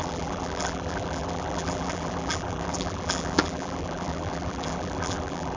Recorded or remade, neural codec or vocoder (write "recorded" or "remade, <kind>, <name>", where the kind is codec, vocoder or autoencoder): remade, vocoder, BigVGAN v2